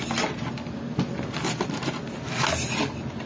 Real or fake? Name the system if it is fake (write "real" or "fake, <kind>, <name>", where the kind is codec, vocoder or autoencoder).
real